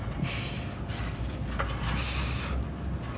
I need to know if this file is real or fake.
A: real